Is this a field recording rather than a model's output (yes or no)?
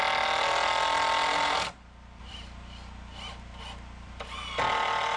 yes